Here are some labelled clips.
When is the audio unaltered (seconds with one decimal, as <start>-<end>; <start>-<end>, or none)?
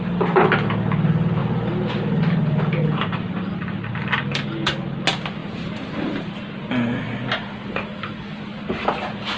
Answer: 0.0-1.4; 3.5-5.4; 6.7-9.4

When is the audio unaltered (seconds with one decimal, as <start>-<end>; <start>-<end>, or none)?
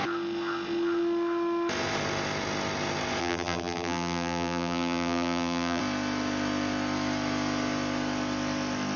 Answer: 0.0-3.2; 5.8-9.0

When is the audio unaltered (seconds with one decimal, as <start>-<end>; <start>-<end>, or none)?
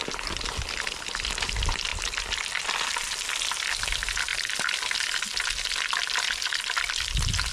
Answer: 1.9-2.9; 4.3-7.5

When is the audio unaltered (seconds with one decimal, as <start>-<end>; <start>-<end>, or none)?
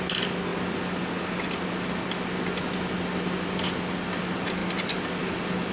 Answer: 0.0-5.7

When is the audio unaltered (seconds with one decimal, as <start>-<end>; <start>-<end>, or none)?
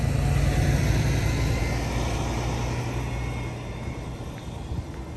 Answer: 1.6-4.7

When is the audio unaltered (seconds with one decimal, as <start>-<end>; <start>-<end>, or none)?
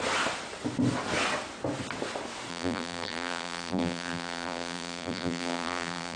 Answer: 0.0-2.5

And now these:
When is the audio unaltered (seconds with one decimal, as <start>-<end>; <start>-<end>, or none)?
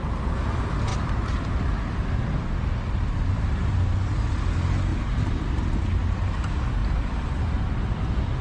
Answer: 0.0-4.9; 5.4-6.8; 7.4-8.4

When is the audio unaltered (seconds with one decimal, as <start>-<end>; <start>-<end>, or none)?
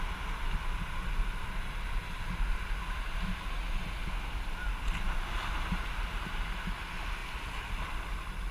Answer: 0.0-8.5